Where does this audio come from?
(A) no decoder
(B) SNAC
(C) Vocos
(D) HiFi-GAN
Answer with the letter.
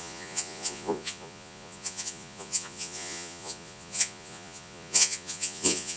C